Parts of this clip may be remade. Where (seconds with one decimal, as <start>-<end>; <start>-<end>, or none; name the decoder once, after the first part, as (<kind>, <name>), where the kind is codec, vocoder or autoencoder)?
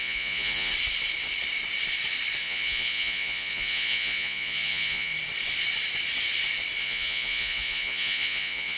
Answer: 0.0-0.7 (vocoder, Vocos); 2.4-5.1; 6.8-8.8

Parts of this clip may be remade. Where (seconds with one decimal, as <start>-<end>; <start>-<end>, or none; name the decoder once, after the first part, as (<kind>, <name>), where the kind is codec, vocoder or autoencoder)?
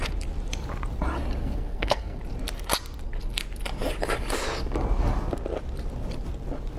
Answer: 1.4-2.2 (codec, SNAC)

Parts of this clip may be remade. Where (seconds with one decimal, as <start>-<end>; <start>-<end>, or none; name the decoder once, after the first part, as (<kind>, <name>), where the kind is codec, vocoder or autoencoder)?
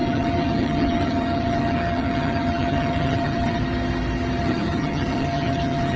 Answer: 0.0-3.6 (vocoder, HiFi-GAN); 4.4-6.0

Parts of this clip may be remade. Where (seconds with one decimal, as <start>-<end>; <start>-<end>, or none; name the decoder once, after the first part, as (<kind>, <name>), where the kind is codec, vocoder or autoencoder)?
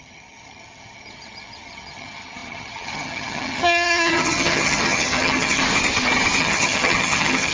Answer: 0.0-5.6 (vocoder, HiFi-GAN); 6.4-7.5